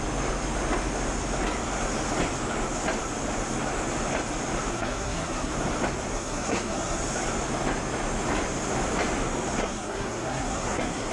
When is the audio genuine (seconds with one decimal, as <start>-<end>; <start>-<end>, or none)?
0.0-4.7; 5.5-6.1; 7.0-9.6